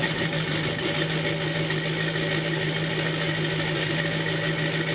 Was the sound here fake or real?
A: real